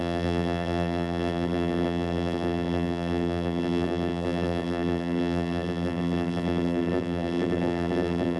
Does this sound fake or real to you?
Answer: fake